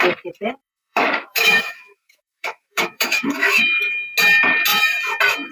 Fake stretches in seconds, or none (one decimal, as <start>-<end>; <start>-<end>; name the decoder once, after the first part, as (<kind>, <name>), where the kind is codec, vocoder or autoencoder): 0.6-3.8 (autoencoder, DAC-VAE)